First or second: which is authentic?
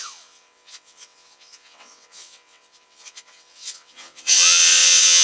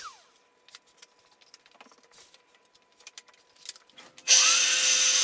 second